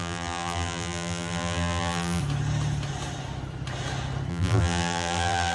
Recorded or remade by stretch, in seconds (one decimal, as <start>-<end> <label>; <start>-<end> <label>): 0.0-2.2 remade; 2.2-4.3 recorded; 4.3-5.5 remade